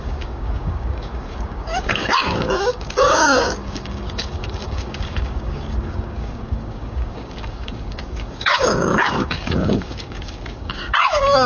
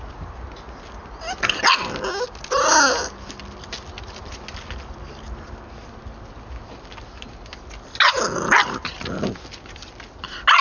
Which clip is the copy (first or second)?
first